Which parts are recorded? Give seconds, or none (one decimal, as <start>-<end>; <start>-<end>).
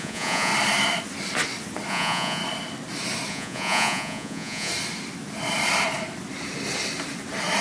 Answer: 0.5-1.9; 2.4-3.3; 4.7-7.6